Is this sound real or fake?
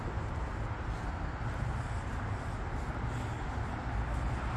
real